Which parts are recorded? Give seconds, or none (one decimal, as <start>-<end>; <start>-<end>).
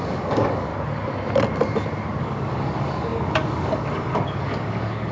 0.7-2.2